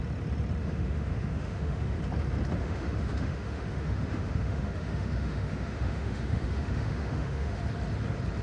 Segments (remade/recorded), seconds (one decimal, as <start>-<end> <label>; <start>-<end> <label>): 0.0-0.6 recorded; 0.6-2.0 remade; 2.0-2.6 recorded; 2.6-7.6 remade; 7.6-8.4 recorded